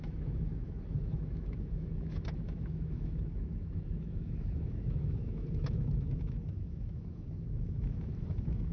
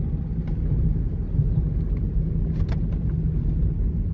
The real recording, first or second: second